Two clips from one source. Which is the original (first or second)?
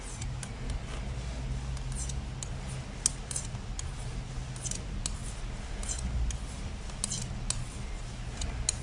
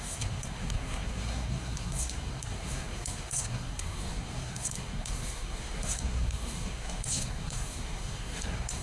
first